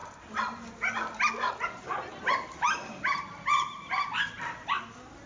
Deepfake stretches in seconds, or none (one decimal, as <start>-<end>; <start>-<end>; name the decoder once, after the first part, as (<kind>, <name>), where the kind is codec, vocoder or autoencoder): none